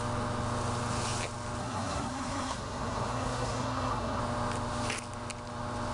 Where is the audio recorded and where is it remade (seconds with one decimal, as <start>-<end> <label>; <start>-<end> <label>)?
0.0-1.6 recorded; 1.6-4.2 remade; 4.2-5.9 recorded